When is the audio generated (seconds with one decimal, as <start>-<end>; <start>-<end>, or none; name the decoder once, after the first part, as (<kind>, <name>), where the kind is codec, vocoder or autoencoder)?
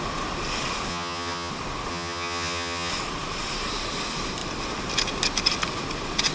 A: 0.9-1.5 (vocoder, HiFi-GAN); 1.9-2.9